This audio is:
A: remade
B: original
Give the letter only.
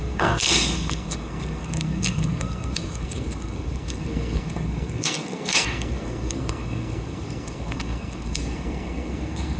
A